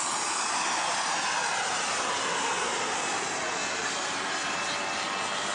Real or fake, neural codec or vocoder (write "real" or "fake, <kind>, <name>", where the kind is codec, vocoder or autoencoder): real